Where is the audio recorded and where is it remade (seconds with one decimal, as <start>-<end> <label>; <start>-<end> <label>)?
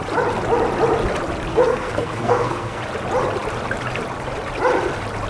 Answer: 0.0-1.5 recorded; 1.5-2.8 remade; 2.8-5.3 recorded